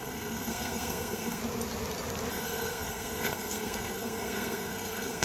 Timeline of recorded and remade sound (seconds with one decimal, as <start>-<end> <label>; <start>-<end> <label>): 0.0-1.4 remade; 1.4-2.3 recorded; 2.3-5.2 remade